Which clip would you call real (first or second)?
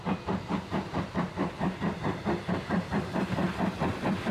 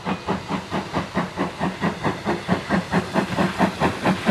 second